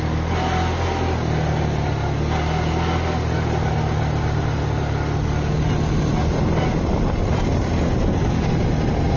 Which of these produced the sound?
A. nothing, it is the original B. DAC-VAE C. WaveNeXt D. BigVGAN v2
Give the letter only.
A